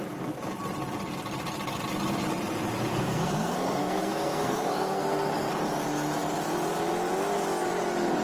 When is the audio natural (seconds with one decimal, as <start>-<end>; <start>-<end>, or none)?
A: 0.0-2.9; 5.5-8.2

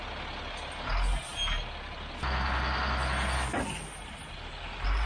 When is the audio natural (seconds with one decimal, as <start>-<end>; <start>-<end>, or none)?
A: 0.0-5.1

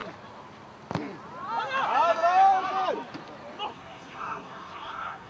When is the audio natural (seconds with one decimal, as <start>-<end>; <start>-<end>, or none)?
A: 0.0-3.7

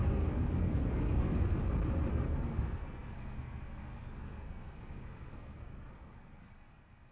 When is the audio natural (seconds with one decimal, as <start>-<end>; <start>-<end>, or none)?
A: 1.6-2.1

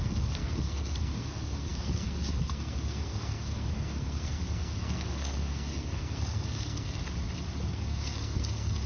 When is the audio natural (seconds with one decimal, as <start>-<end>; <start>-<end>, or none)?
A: 7.0-7.7